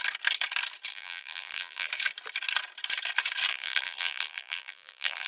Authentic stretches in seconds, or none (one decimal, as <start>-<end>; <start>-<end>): 0.0-0.9; 1.9-3.5